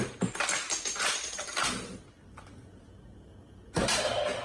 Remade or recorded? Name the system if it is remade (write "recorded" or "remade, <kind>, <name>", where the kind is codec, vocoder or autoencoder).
recorded